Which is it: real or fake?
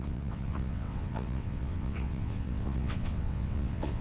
fake